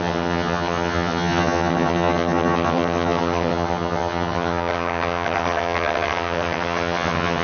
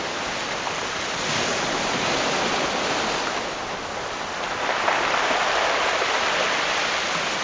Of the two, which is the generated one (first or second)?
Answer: first